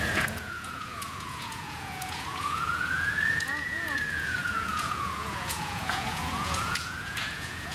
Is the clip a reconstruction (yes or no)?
yes